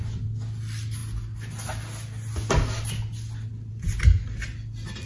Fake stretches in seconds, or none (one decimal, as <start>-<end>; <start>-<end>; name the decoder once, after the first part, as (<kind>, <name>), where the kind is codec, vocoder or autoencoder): none